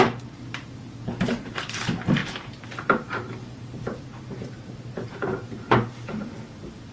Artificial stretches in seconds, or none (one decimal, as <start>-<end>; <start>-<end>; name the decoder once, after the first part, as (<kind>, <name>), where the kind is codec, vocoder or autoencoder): 0.0-6.9 (vocoder, BigVGAN v2)